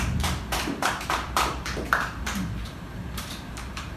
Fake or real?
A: fake